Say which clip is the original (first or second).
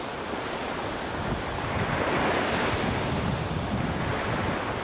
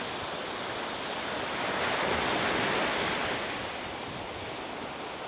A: second